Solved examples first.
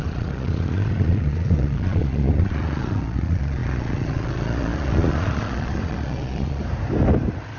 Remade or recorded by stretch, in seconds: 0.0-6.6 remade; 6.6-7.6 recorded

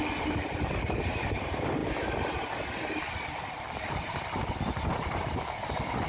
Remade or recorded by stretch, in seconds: 0.0-6.1 recorded

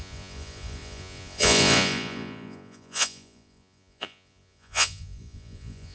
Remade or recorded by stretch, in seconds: 0.0-5.9 remade

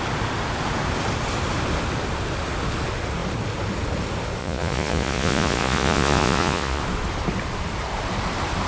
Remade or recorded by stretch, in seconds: 0.0-4.4 recorded; 4.4-6.8 remade; 6.8-8.7 recorded

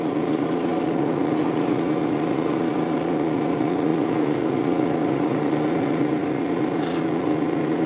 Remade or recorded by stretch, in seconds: 0.0-7.9 remade

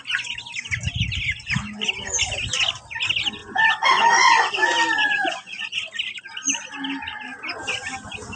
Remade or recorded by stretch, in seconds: 0.0-3.4 recorded; 3.4-4.5 remade; 4.5-5.0 recorded; 5.0-5.8 remade; 5.8-8.4 recorded